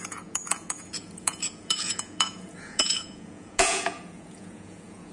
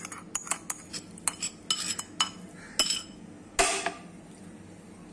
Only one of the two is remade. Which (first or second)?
first